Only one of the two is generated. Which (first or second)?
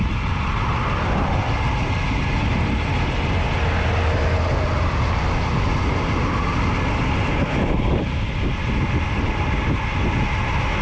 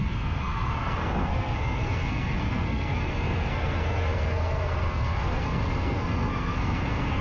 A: second